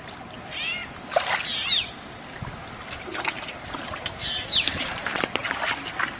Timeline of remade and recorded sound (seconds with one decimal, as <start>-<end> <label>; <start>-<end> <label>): 0.0-4.4 recorded; 4.4-5.4 remade; 5.4-6.2 recorded

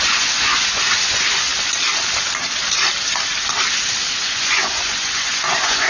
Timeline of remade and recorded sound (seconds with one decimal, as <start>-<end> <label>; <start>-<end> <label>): 0.0-1.5 remade; 1.5-4.2 recorded; 4.2-5.9 remade

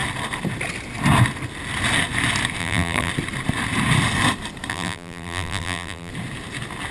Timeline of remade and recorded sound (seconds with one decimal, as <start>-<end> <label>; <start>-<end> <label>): 0.0-2.6 recorded; 2.6-3.1 remade; 3.1-4.7 recorded; 4.7-6.1 remade; 6.1-6.9 recorded

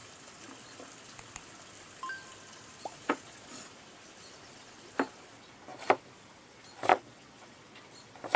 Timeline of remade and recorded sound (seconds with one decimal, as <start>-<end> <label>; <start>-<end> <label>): 0.0-2.9 recorded; 2.9-3.6 remade; 3.6-6.9 recorded; 6.9-7.8 remade; 7.8-8.4 recorded

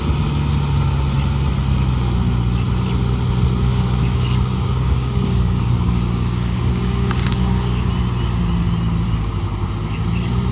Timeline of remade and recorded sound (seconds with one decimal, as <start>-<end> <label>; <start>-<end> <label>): 0.0-3.7 recorded; 3.7-7.9 remade; 7.9-10.5 recorded